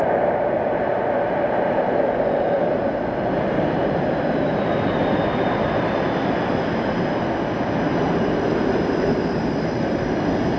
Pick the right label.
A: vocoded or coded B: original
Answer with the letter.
B